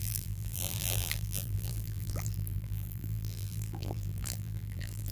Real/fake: fake